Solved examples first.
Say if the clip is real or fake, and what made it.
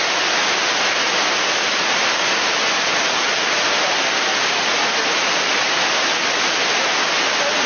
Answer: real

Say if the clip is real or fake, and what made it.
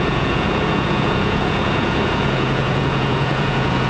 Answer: fake, vocoder, Vocos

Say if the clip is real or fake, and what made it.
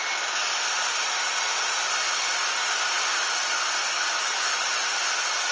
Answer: real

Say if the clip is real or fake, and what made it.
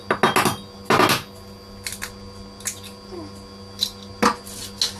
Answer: real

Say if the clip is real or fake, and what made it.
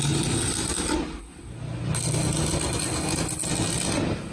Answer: real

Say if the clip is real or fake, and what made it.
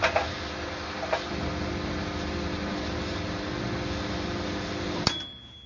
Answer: real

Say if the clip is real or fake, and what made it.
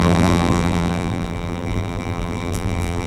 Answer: fake, vocoder, BigVGAN v2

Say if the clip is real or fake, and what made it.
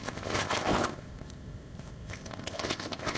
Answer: fake, codec, ZipCodec